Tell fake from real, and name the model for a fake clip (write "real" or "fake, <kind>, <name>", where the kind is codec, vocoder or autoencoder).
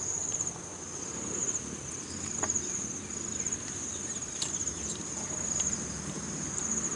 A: real